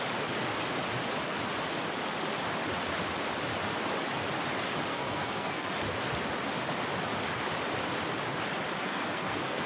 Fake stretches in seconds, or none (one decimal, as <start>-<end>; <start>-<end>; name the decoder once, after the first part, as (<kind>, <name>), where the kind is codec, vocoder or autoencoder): 4.9-5.7 (codec, SNAC); 8.8-9.7